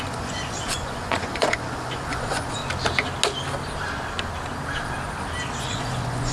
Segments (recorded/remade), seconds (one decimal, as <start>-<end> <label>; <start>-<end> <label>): 0.0-2.6 remade; 2.6-5.6 recorded; 5.6-6.3 remade